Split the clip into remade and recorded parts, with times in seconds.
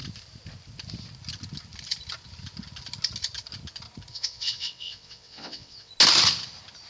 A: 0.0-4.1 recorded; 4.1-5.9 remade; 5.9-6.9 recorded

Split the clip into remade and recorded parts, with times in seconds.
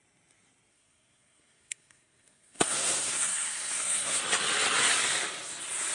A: 0.0-0.7 recorded; 0.7-4.2 remade; 4.2-5.9 recorded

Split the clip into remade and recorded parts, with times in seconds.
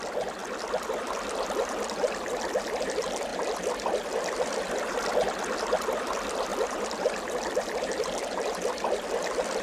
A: 0.0-3.3 recorded; 3.3-5.1 remade; 5.1-6.5 recorded; 6.5-9.6 remade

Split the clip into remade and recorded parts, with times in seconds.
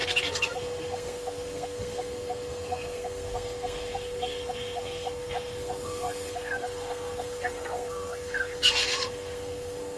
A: 0.0-10.0 remade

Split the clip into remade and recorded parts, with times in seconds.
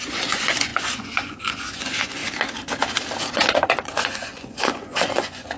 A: 0.0-2.2 remade; 2.2-3.2 recorded; 3.2-5.6 remade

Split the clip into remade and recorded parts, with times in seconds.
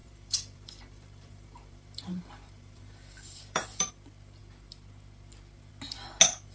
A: 0.0-3.9 remade; 3.9-6.5 recorded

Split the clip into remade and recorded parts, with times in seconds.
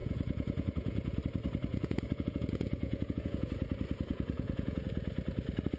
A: 0.0-1.2 remade; 1.2-1.7 recorded; 1.7-3.5 remade; 3.5-4.1 recorded; 4.1-4.8 remade; 4.8-5.8 recorded